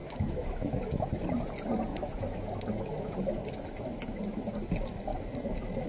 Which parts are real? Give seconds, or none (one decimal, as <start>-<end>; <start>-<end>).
1.1-1.9; 4.5-5.1